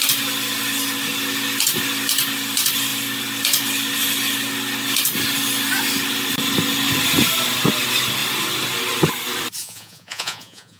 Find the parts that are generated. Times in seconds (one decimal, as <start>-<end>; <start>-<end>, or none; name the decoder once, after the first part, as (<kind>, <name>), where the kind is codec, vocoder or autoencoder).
9.6-10.8 (vocoder, Vocos)